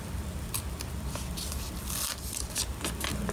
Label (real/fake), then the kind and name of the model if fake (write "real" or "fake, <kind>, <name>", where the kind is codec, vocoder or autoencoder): real